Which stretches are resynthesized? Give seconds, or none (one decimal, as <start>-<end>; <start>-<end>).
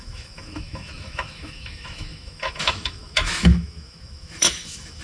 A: 0.0-5.0